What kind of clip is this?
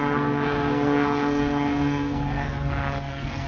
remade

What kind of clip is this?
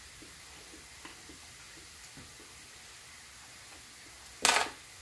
recorded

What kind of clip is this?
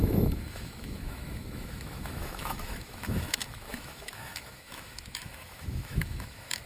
remade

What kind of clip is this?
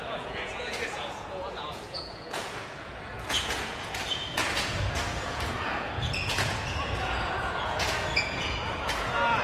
remade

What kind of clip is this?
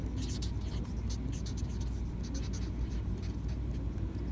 recorded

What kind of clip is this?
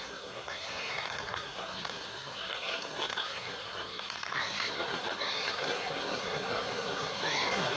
remade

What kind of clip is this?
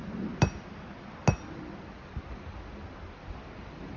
recorded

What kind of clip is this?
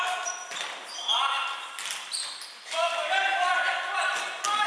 recorded